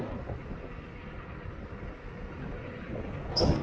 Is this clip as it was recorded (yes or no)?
yes